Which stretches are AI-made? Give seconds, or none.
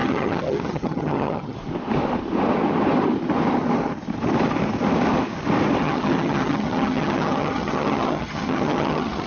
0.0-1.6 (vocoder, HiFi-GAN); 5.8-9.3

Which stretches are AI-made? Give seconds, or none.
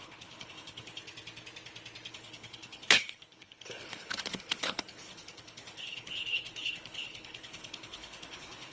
0.0-1.0 (codec, HILCodec); 2.1-8.7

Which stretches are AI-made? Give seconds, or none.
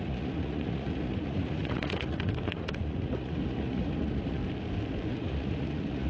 0.0-4.4 (vocoder, Vocos); 5.1-6.1